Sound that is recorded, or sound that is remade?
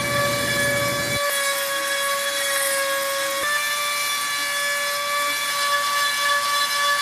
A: recorded